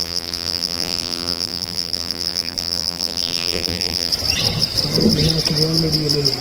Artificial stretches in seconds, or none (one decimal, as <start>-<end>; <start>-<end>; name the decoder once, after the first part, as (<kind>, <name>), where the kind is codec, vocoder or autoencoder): 0.0-4.1 (vocoder, BigVGAN v2)